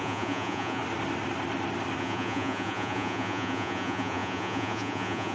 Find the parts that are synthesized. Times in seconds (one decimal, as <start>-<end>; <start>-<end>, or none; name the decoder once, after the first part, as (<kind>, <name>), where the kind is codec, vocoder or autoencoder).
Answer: 0.0-0.8 (vocoder, Vocos); 2.0-5.3